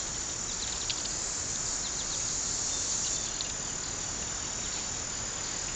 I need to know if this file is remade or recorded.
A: recorded